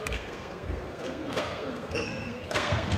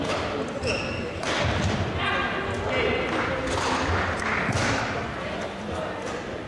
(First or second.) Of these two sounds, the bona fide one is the second